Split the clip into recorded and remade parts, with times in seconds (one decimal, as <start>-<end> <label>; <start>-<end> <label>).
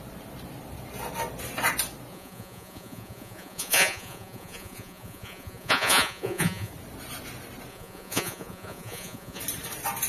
0.0-2.1 recorded; 2.1-6.7 remade; 6.7-7.7 recorded; 7.7-9.4 remade; 9.4-10.1 recorded